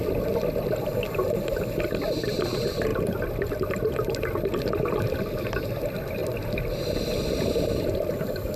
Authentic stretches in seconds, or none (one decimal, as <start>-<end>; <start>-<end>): 0.0-6.2; 8.1-8.6